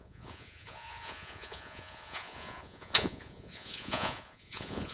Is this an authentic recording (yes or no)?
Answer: no